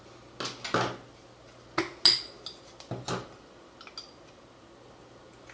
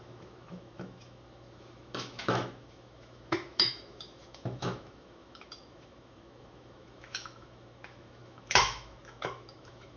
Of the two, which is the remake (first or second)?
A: second